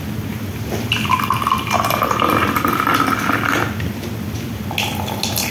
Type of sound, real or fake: real